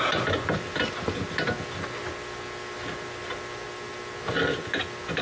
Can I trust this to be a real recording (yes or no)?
yes